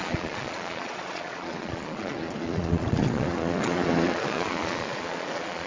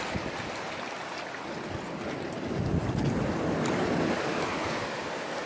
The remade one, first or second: first